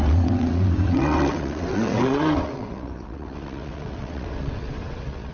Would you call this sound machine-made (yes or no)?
yes